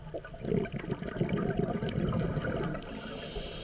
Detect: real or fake real